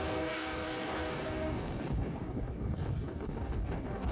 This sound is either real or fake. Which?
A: fake